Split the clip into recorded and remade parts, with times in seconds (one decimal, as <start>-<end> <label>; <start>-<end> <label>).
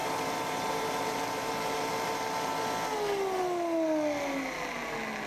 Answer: 0.0-2.5 remade; 2.5-5.3 recorded